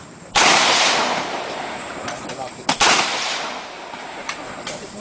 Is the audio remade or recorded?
remade